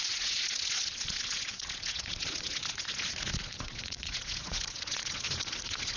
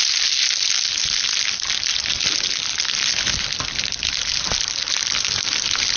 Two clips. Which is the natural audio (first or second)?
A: second